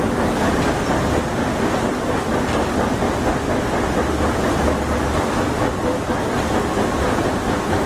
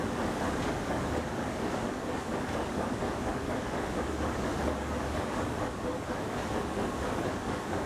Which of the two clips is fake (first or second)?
second